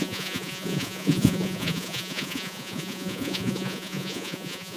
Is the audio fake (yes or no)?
yes